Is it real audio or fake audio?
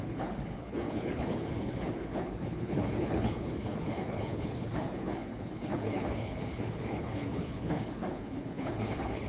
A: fake